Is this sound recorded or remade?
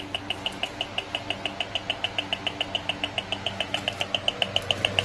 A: recorded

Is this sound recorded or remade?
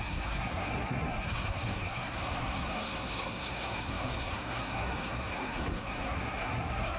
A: remade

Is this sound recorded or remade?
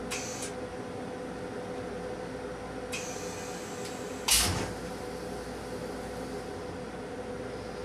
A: recorded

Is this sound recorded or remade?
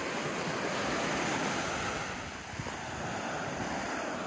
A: recorded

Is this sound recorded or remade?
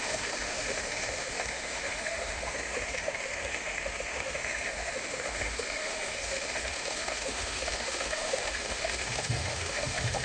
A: remade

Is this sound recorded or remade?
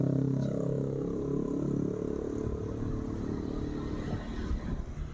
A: recorded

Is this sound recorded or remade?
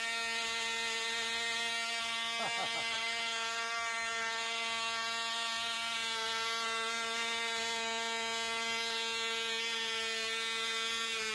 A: recorded